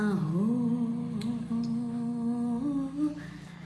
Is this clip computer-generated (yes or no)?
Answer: no